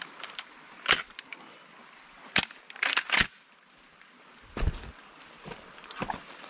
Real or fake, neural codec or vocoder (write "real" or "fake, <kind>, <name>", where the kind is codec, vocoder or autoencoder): real